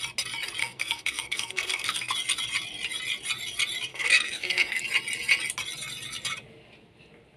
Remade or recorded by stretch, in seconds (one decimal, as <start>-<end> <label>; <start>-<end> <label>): 0.0-0.6 recorded; 0.6-2.1 remade; 2.1-3.9 recorded; 3.9-4.8 remade; 4.8-7.4 recorded